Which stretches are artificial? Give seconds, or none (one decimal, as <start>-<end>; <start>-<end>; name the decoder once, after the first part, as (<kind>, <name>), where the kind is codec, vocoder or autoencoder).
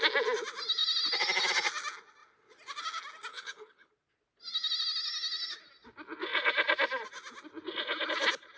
3.3-3.9 (codec, HILCodec)